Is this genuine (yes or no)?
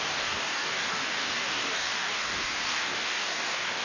no